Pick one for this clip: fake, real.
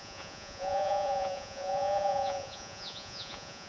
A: fake